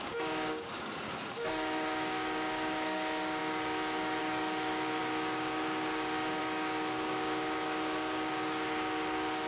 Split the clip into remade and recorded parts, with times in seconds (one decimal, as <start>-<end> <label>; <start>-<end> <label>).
0.0-9.5 remade